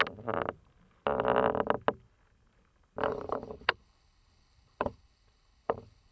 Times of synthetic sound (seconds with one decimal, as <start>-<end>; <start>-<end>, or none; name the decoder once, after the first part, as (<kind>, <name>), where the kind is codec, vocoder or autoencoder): 3.0-6.1 (codec, HILCodec)